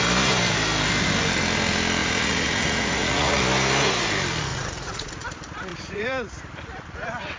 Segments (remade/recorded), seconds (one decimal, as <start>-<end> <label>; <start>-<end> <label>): 0.0-2.0 recorded; 2.0-3.4 remade; 3.4-4.5 recorded; 4.5-5.1 remade; 5.1-5.7 recorded; 5.7-6.4 remade; 6.4-7.4 recorded

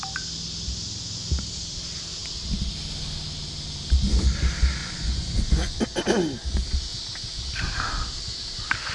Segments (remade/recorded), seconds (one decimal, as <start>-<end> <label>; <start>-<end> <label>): 0.0-4.8 recorded; 4.8-5.8 remade; 5.8-8.9 recorded

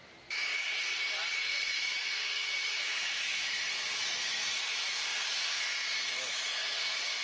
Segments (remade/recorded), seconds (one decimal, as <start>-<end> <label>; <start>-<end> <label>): 0.0-0.5 remade; 0.5-1.3 recorded; 1.3-7.2 remade

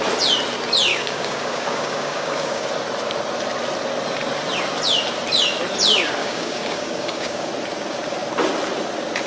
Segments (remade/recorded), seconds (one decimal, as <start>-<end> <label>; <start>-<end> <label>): 0.0-0.9 recorded; 0.9-2.7 remade; 2.7-6.2 recorded; 6.2-7.5 remade; 7.5-9.3 recorded

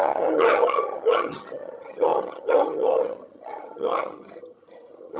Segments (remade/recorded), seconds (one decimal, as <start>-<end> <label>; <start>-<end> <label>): 0.0-5.2 remade

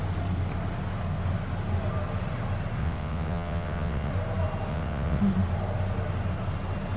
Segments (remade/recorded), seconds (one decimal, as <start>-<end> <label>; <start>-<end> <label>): 0.0-2.8 recorded; 2.8-4.1 remade; 4.1-4.7 recorded; 4.7-5.2 remade; 5.2-7.0 recorded